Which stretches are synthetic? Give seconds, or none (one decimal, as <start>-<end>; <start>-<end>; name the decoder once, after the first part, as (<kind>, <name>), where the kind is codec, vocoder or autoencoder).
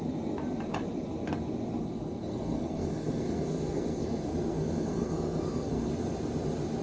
1.8-5.9 (codec, SNAC)